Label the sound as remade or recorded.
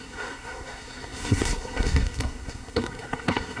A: remade